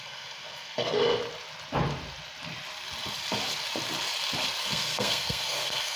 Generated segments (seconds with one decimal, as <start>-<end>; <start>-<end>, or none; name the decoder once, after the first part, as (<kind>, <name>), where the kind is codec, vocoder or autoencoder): 0.0-1.0 (codec, SNAC); 4.6-6.0